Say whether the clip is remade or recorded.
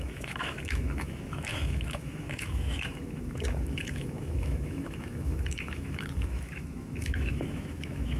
remade